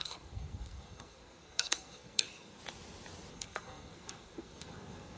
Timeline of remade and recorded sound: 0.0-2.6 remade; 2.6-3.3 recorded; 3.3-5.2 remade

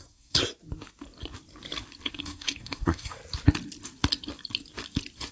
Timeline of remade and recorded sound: 0.0-0.4 remade; 0.4-2.1 recorded; 2.1-3.2 remade; 3.2-5.3 recorded

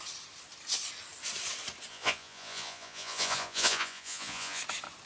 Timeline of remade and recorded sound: 0.0-1.9 recorded; 1.9-4.6 remade; 4.6-5.1 recorded